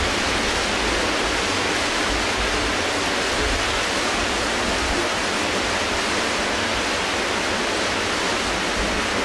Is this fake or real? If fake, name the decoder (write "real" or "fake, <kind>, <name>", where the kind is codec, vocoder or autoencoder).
real